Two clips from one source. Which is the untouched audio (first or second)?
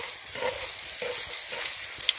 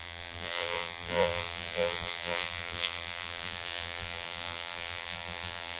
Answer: first